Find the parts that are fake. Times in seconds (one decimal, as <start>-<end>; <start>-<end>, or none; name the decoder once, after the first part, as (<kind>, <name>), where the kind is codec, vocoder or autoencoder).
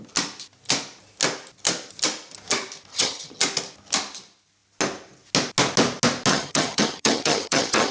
2.9-3.4 (vocoder, HiFi-GAN); 6.3-7.9